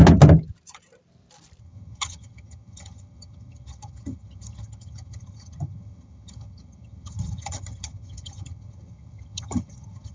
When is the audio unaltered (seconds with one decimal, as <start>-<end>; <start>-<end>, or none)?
0.0-1.6